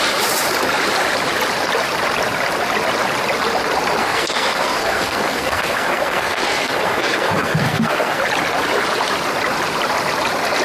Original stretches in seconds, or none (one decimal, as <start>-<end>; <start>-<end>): 0.0-4.0; 8.2-10.6